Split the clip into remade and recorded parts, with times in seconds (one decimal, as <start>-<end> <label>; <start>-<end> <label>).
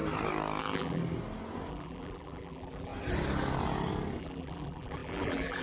0.0-0.6 recorded; 0.6-1.0 remade; 1.0-1.7 recorded; 1.7-2.9 remade; 2.9-4.2 recorded; 4.2-5.6 remade